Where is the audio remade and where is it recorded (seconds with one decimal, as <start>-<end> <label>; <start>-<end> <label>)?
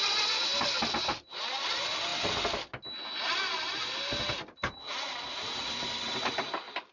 0.0-0.5 recorded; 0.5-1.2 remade; 1.2-6.9 recorded